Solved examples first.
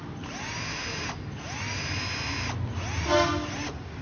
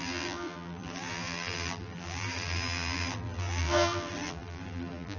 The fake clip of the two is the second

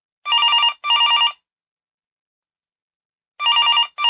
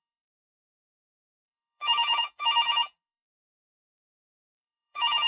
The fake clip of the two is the second